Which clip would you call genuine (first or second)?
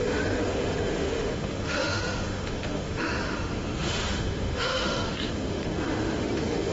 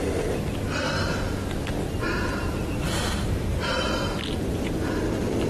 second